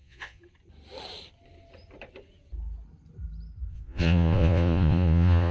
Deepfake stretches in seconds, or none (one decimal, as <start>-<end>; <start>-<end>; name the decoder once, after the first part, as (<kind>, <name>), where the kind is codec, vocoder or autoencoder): 0.0-0.4 (vocoder, Vocos); 3.7-5.5